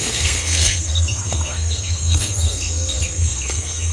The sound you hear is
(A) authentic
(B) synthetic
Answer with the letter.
B